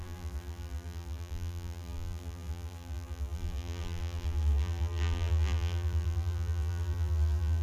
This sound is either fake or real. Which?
fake